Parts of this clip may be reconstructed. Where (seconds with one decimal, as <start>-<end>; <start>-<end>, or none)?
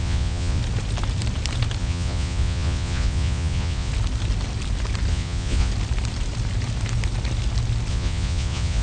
0.0-0.6; 1.8-3.9; 5.1-5.7; 7.9-8.8